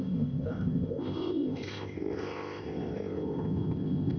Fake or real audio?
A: fake